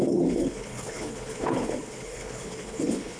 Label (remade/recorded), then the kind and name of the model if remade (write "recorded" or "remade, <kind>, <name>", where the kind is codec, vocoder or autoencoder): remade, codec, HILCodec